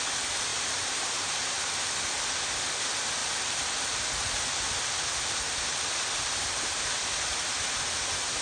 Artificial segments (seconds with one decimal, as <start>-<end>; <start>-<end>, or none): 0.5-1.7; 7.3-8.4